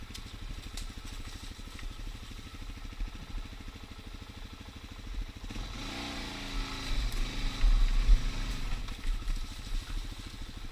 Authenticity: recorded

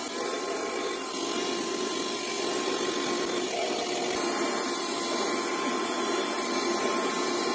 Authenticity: recorded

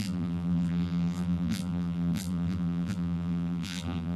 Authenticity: remade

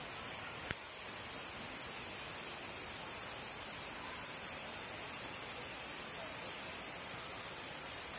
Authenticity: remade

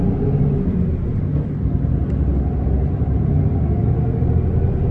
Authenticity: recorded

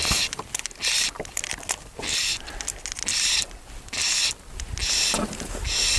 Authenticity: recorded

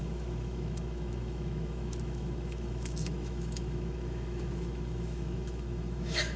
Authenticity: remade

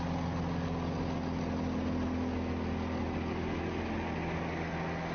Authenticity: recorded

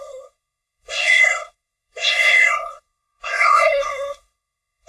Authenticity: remade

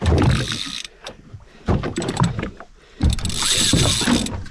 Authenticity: recorded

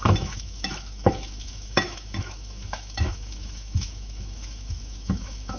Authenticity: remade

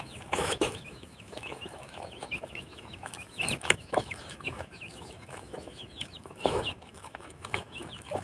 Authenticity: remade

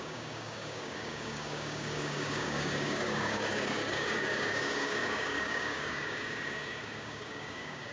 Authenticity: remade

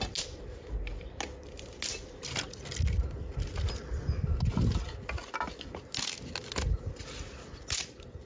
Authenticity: recorded